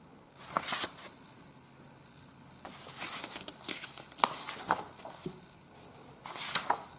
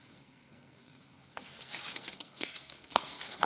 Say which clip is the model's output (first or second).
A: second